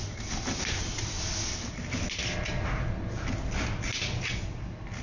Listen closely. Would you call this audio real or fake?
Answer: real